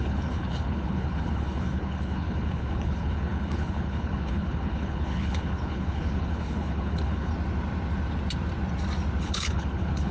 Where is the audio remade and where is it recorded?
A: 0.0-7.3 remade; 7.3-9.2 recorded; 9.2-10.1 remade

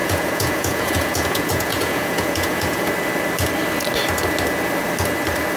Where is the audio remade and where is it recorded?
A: 0.0-2.9 remade; 2.9-5.6 recorded

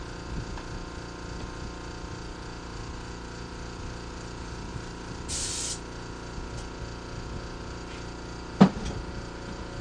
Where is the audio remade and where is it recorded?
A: 0.0-4.7 recorded; 4.7-5.5 remade; 5.5-9.8 recorded

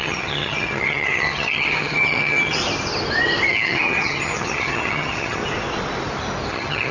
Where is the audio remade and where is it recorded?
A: 0.0-2.6 remade; 2.6-3.5 recorded; 3.5-5.4 remade; 5.4-6.5 recorded; 6.5-6.9 remade

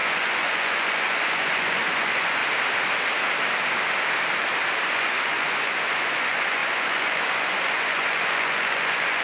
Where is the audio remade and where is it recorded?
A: 0.0-2.4 remade; 2.4-4.9 recorded; 4.9-9.2 remade

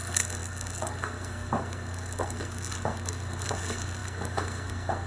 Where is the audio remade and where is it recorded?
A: 0.0-5.1 remade

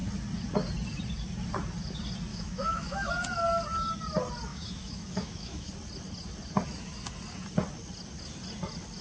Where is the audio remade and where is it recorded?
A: 0.0-2.3 recorded; 2.3-3.1 remade; 3.1-4.5 recorded; 4.5-5.7 remade; 5.7-9.0 recorded

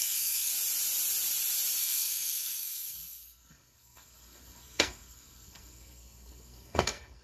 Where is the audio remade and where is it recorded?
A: 0.0-0.5 remade; 0.5-1.8 recorded; 1.8-7.2 remade